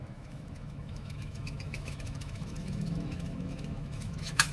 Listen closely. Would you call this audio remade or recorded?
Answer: remade